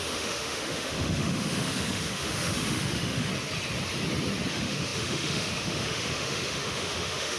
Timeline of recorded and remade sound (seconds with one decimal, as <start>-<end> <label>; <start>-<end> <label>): 0.0-3.3 remade; 3.3-4.5 recorded; 4.5-7.4 remade